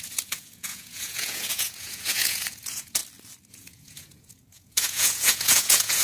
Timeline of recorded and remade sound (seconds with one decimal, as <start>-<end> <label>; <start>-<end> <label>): 0.0-3.0 remade; 3.0-3.5 recorded; 3.5-6.0 remade